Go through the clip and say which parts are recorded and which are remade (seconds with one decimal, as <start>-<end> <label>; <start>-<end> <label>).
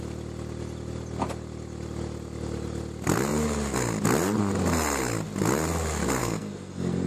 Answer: 0.0-6.2 recorded; 6.2-7.1 remade